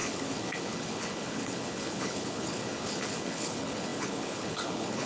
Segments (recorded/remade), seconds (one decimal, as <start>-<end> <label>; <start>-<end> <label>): 0.0-5.1 remade